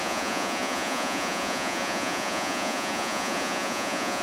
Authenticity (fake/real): fake